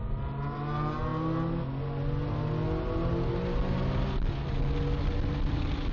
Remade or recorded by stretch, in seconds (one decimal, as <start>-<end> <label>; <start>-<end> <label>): 0.0-5.9 recorded